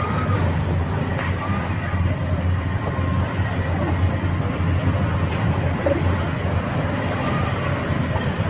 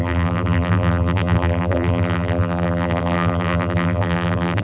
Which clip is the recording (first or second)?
first